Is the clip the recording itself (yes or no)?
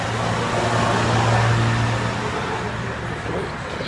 yes